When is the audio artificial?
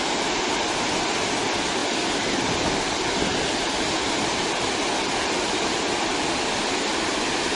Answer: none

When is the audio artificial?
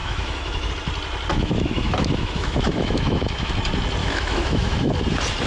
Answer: 0.0-0.7 (autoencoder, DAC-VAE); 1.3-3.5; 4.0-4.9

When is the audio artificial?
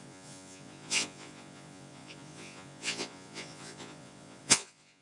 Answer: 0.0-5.0 (vocoder, Vocos)